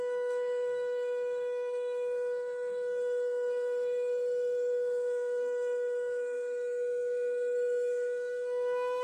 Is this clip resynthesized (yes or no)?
yes